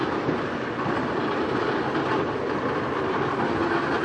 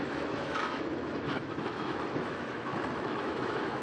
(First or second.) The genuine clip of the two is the first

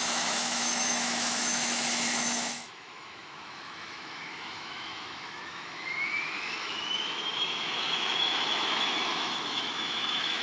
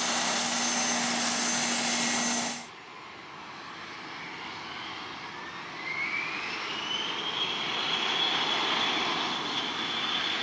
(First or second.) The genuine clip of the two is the second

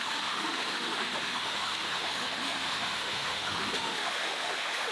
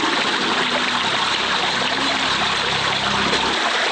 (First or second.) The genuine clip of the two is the second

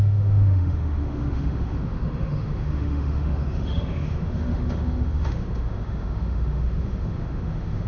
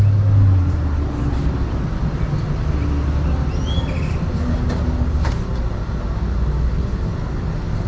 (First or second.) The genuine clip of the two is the second